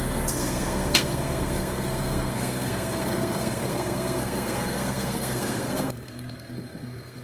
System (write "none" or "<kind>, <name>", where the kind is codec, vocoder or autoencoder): codec, SNAC